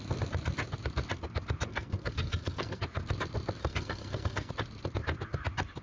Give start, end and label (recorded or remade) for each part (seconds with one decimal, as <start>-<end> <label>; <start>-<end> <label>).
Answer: 0.0-1.7 recorded; 1.7-2.8 remade; 2.8-3.6 recorded; 3.6-4.5 remade; 4.5-5.8 recorded